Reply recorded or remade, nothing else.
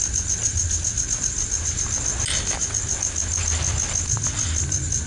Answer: recorded